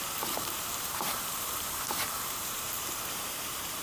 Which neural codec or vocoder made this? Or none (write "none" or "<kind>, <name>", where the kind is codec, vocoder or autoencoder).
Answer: vocoder, BigVGAN v2